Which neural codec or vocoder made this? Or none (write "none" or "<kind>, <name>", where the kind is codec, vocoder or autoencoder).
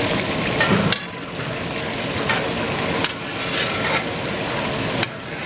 none